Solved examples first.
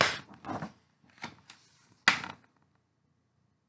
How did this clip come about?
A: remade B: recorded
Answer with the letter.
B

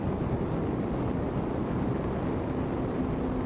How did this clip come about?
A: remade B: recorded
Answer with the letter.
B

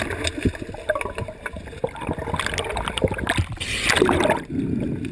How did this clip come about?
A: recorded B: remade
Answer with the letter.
A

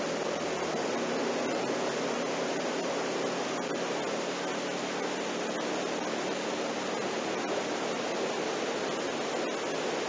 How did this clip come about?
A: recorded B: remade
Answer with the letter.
A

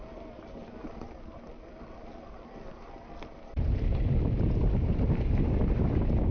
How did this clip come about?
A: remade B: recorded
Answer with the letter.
B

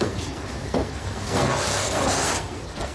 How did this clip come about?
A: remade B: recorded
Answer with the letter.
A